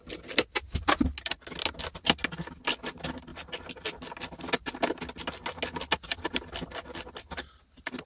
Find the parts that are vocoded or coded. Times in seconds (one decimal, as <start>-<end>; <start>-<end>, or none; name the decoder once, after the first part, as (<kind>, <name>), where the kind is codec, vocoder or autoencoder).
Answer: none